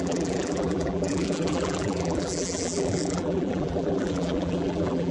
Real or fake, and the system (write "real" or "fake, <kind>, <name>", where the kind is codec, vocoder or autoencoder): fake, vocoder, BigVGAN v2